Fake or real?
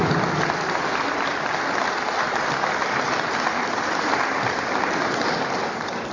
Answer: real